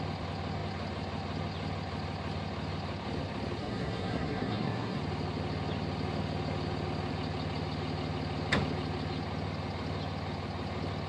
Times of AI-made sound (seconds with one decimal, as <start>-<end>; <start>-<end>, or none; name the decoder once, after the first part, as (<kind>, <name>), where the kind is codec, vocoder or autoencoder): 3.6-5.0 (codec, SNAC)